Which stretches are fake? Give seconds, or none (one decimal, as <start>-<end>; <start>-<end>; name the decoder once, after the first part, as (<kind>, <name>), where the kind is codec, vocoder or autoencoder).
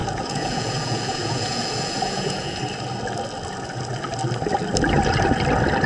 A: 0.0-2.6 (vocoder, Vocos)